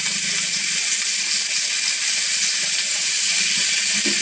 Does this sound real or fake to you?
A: real